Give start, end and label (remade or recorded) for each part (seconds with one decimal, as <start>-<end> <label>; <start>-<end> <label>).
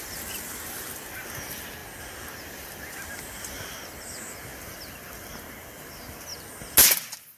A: 0.0-7.4 recorded